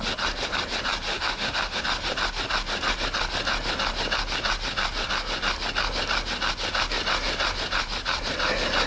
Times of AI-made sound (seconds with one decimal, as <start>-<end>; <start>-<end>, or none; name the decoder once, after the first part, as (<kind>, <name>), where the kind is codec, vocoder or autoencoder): 1.1-1.8 (autoencoder, DAC-VAE)